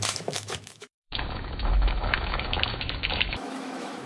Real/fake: fake